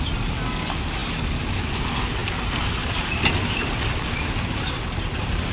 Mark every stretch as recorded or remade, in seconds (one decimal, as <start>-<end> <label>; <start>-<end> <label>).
0.0-5.5 recorded